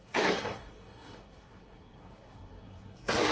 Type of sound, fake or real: fake